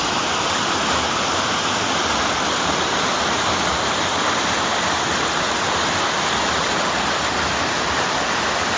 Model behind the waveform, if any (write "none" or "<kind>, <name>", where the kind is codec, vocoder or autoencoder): none